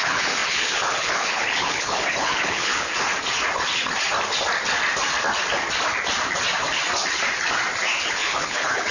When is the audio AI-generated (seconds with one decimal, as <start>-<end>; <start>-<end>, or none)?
0.0-2.9; 8.0-8.9